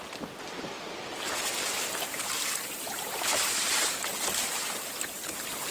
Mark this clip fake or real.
fake